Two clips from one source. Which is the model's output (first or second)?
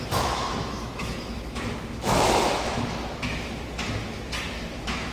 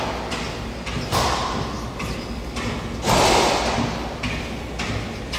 first